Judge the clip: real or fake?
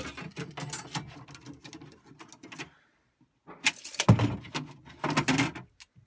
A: real